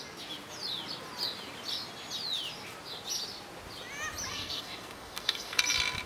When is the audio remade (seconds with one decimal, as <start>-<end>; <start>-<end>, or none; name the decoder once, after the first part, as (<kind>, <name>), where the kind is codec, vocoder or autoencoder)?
4.3-5.6 (codec, SNAC)